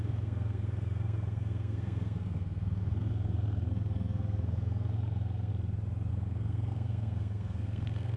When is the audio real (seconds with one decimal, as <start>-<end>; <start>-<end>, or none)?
5.5-6.1